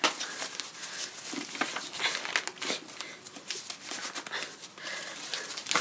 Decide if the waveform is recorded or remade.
recorded